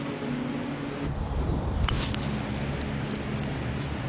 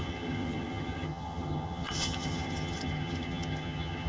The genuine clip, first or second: first